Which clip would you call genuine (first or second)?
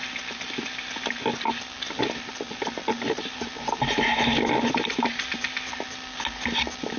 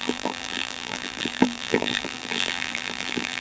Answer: first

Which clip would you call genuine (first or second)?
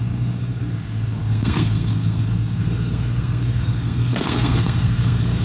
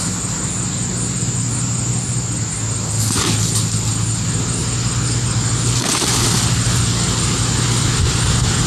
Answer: second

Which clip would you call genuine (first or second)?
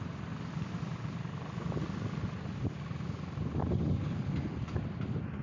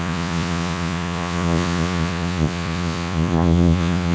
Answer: first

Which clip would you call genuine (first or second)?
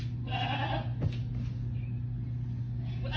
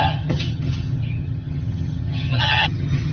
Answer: first